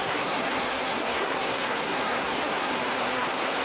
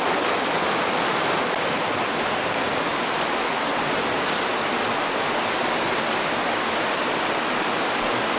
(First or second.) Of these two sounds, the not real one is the first